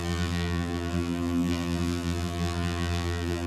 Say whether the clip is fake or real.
fake